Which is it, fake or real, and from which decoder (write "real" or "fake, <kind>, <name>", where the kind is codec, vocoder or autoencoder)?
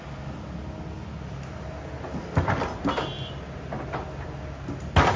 real